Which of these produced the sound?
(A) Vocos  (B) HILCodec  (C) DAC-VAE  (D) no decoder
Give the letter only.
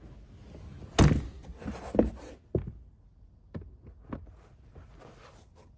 D